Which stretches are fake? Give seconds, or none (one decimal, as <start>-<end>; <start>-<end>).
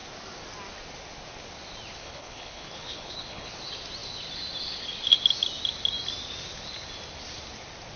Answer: 2.0-3.5